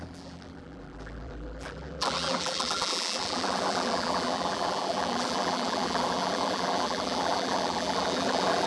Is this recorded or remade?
remade